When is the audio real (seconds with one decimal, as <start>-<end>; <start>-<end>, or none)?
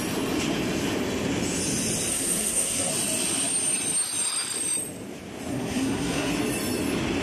0.0-2.1; 2.9-5.5; 6.3-7.2